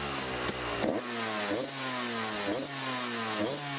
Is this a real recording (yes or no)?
yes